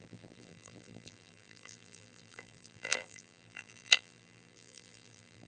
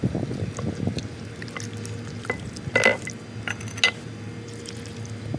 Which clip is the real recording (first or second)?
second